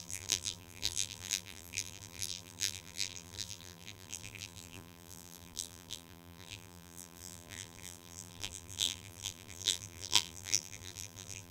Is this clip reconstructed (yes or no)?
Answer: yes